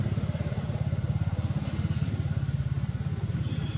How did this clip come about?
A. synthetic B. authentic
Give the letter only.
B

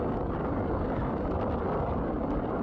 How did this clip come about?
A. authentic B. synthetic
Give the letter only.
A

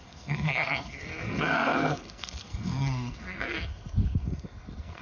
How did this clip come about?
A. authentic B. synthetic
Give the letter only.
B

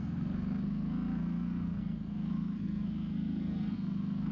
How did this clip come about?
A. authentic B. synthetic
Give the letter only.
B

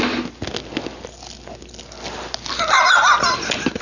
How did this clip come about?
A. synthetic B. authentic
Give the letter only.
B